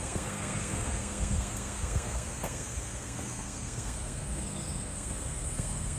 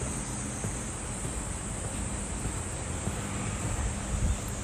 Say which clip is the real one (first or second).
second